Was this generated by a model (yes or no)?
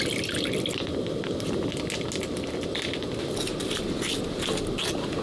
no